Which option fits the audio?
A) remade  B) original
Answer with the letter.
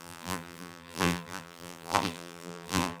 A